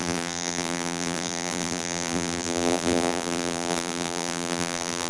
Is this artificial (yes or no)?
yes